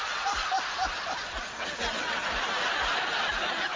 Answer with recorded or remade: recorded